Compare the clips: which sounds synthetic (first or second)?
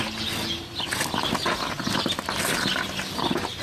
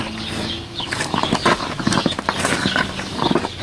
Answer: second